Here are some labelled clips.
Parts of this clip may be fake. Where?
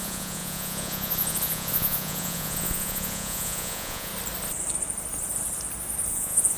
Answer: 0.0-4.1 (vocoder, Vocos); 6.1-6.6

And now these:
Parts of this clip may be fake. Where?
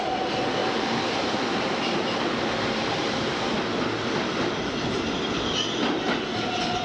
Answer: 0.6-3.5 (vocoder, BigVGAN v2)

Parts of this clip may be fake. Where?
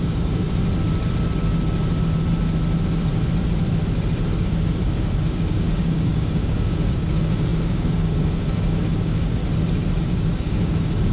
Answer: 0.0-0.6 (codec, DAC); 4.4-9.4; 10.0-11.1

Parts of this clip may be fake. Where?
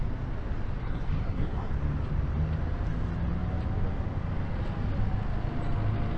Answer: 0.8-1.7 (codec, SNAC)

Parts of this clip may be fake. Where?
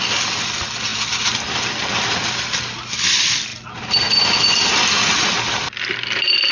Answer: none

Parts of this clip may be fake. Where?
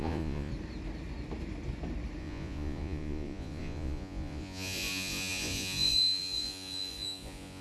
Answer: 0.0-0.5 (vocoder, Vocos); 2.2-7.6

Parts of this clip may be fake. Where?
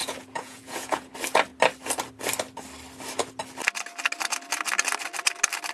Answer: 0.0-1.1 (vocoder, Vocos)